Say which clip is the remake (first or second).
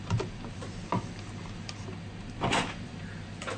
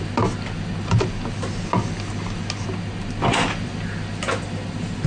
first